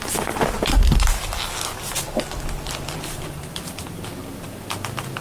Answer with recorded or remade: recorded